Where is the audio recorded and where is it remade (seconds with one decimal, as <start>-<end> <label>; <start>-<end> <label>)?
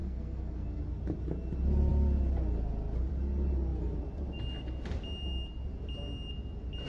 0.0-0.8 remade; 0.8-6.9 recorded